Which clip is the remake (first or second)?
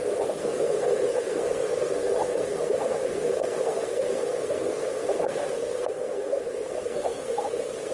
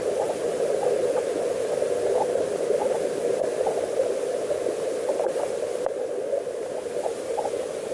first